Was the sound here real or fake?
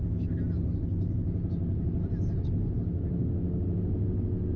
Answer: real